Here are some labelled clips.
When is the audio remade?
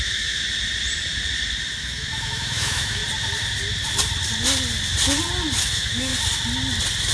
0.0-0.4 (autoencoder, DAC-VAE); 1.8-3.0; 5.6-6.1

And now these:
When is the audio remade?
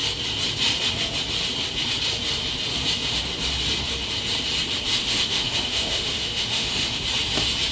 5.0-7.0 (autoencoder, DAC-VAE)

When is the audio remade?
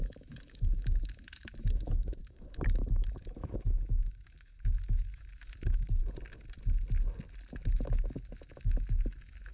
0.0-6.0 (autoencoder, DAC-VAE); 7.7-9.5